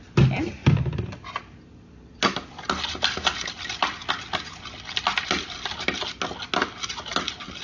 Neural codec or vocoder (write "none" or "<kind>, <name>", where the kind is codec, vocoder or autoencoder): none